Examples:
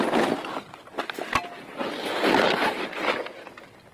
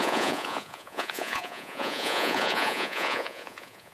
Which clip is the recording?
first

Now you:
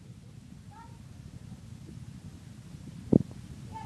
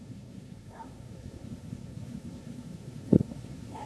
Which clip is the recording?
first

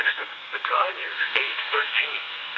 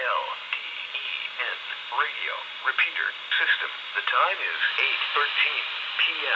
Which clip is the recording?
second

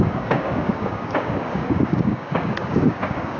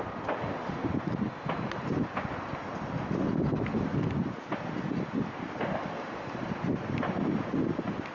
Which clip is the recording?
second